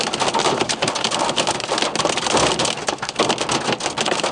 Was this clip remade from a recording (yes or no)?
no